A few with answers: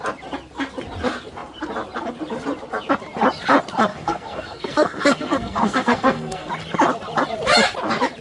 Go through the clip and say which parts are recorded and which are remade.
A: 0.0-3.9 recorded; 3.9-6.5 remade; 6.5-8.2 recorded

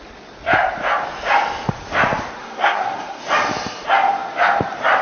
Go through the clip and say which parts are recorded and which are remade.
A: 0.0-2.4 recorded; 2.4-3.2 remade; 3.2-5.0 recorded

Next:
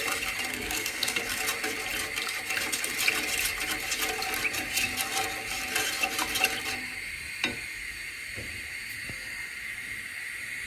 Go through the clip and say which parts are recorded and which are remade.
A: 0.0-0.5 recorded; 0.5-1.2 remade; 1.2-10.7 recorded

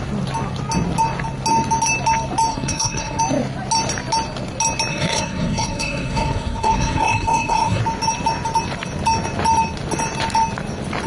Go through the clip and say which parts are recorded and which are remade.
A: 0.0-2.5 recorded; 2.5-3.2 remade; 3.2-4.9 recorded; 4.9-7.8 remade; 7.8-11.1 recorded

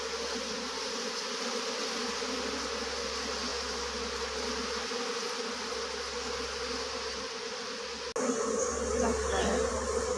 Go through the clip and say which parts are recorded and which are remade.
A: 0.0-10.2 recorded

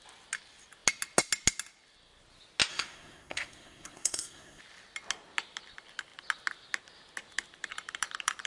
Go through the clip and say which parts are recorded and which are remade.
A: 0.0-2.7 recorded; 2.7-4.6 remade; 4.6-8.5 recorded